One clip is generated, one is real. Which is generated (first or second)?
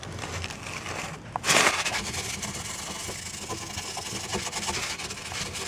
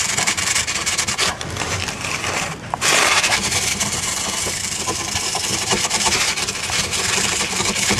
second